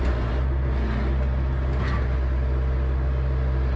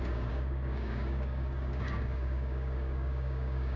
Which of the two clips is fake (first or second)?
second